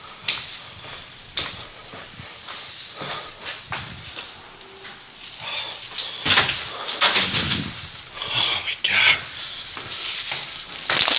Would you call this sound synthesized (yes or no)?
no